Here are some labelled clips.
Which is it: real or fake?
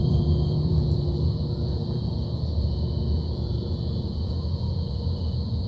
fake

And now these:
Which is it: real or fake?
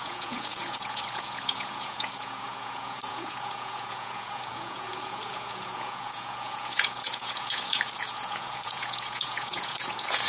fake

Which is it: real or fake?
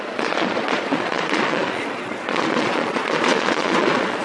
fake